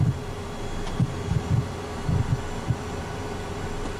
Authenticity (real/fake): real